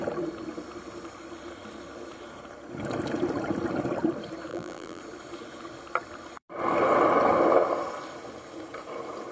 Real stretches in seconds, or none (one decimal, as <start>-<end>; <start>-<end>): 0.0-4.5; 5.0-9.3

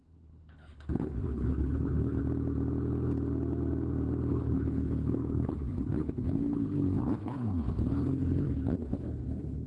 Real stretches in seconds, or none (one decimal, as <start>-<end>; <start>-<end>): 2.2-4.3

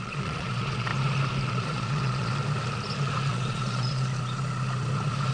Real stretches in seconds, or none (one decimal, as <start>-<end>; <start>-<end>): 0.9-1.5; 2.3-3.3; 4.1-5.3

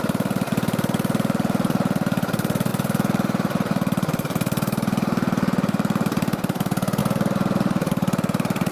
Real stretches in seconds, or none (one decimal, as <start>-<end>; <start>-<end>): none

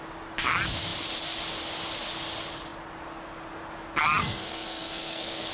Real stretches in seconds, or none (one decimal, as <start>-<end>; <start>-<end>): 0.0-4.2

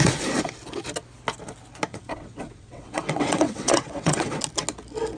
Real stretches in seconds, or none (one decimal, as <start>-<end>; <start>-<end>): 0.0-1.9; 4.4-5.2